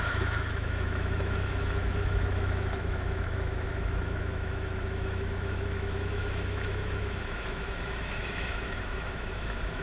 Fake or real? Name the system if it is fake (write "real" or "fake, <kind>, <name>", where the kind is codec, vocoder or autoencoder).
fake, autoencoder, DAC-VAE